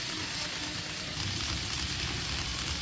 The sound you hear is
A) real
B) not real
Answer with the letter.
A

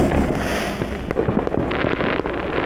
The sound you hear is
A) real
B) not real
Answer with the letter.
A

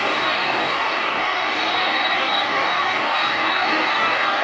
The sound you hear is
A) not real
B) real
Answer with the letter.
A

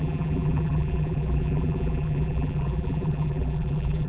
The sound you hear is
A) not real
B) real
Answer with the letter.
A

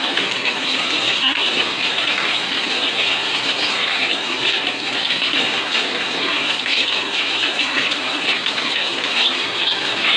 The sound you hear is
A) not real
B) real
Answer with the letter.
A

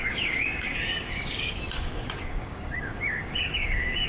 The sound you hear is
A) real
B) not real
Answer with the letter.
B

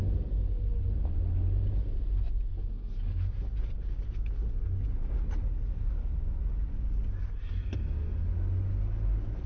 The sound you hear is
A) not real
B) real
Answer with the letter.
B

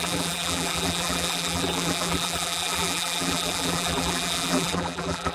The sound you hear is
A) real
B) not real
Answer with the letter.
B